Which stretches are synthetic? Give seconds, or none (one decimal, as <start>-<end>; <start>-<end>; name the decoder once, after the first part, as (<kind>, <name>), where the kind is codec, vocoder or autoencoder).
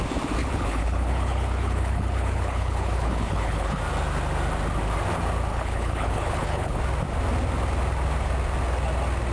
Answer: 0.4-3.8 (codec, HILCodec); 5.5-6.8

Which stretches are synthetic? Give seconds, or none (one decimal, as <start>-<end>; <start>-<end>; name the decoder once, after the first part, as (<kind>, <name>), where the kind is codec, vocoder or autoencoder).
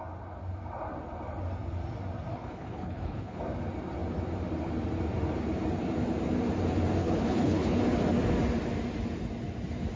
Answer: 2.3-3.4 (codec, HILCodec); 7.0-7.8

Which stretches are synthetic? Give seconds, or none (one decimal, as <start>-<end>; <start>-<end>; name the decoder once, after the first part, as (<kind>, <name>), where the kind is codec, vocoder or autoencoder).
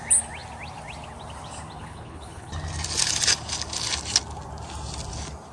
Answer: 1.8-2.5 (codec, HILCodec)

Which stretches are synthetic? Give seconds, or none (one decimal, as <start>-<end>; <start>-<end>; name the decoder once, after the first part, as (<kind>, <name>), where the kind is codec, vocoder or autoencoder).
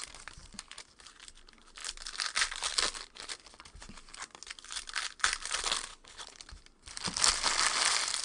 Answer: 5.9-6.4 (codec, HILCodec)